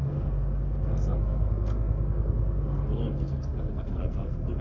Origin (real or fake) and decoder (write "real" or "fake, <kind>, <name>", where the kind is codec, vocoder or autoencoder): fake, codec, SNAC